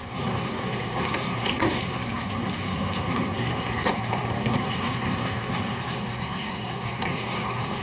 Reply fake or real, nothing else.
fake